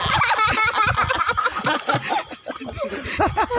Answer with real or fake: real